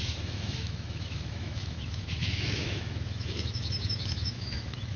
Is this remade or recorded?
remade